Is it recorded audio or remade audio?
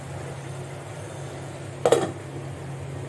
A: recorded